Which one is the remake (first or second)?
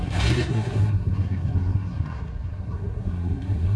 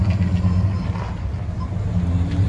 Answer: first